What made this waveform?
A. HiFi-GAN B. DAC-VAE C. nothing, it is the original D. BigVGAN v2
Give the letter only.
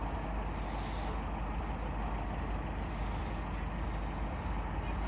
C